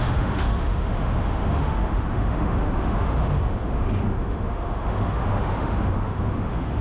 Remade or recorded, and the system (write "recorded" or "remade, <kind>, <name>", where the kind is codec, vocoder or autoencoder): remade, autoencoder, DAC-VAE